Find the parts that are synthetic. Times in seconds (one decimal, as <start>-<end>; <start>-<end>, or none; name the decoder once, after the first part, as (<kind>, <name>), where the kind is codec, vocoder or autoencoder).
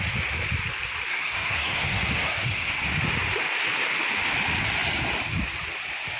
1.1-3.0 (codec, SNAC)